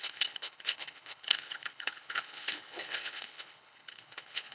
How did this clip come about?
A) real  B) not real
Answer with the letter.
B